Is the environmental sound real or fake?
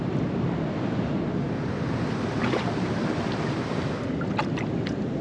real